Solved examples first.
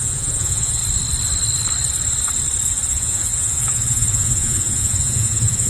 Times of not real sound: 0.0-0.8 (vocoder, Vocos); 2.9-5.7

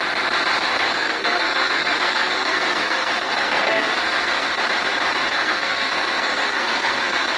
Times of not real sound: 0.7-4.6 (codec, SNAC); 5.2-7.4

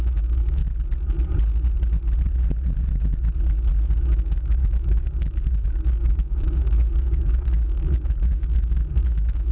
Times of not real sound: 0.0-0.6 (codec, DAC); 4.0-9.5

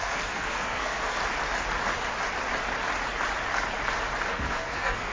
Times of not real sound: 0.0-1.2 (codec, SNAC); 4.3-5.1

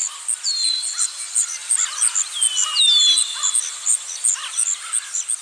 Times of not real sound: none

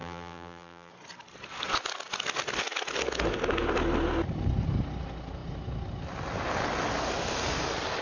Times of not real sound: 0.0-0.9 (vocoder, BigVGAN v2)

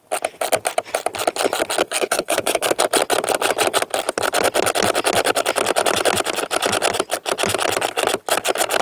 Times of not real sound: 1.8-2.8 (codec, SNAC)

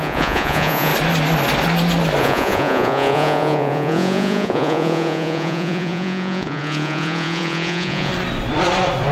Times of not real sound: 0.0-0.9 (vocoder, Vocos); 2.2-8.1